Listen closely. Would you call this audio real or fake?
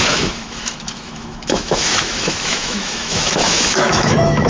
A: fake